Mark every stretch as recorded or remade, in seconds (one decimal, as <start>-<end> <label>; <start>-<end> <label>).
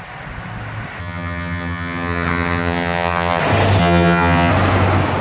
0.0-1.0 recorded; 1.0-3.4 remade; 3.4-3.8 recorded; 3.8-4.5 remade; 4.5-5.2 recorded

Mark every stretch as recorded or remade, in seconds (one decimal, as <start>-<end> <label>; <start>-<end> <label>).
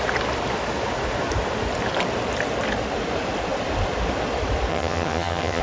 0.0-4.7 recorded; 4.7-5.6 remade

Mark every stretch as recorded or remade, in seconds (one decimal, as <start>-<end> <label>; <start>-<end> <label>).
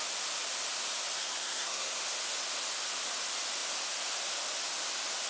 0.0-1.2 recorded; 1.2-2.0 remade; 2.0-5.3 recorded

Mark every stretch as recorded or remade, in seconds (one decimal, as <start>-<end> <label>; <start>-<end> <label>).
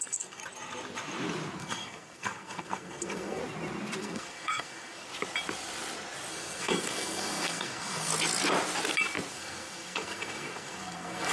0.0-0.4 remade; 0.4-1.6 recorded; 1.6-3.4 remade; 3.4-4.0 recorded; 4.0-5.1 remade; 5.1-6.3 recorded; 6.3-8.1 remade; 8.1-9.3 recorded; 9.3-11.3 remade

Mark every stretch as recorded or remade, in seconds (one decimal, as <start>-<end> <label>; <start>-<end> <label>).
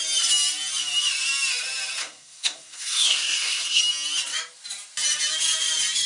0.0-2.0 recorded; 2.0-3.8 remade; 3.8-6.1 recorded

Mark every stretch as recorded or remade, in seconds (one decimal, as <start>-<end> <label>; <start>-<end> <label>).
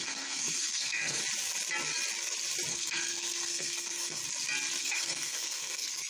0.0-1.2 remade; 1.2-2.7 recorded; 2.7-4.2 remade; 4.2-4.8 recorded; 4.8-6.1 remade